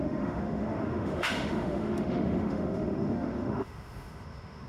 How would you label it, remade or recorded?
remade